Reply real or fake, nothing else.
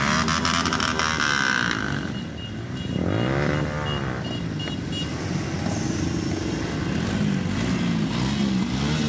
real